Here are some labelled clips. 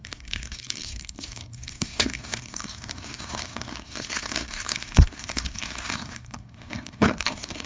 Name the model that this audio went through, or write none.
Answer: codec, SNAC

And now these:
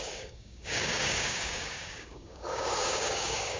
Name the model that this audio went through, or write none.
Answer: codec, DAC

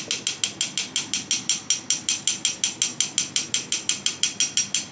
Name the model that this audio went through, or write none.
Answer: none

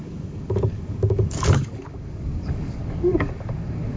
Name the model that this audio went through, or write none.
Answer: codec, DAC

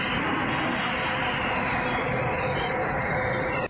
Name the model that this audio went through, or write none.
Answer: none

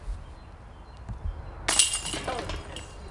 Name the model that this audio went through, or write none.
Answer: none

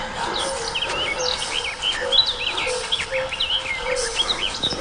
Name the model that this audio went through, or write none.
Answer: none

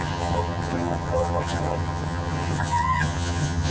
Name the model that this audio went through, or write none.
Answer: vocoder, HiFi-GAN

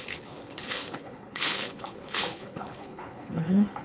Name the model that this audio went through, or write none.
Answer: codec, HILCodec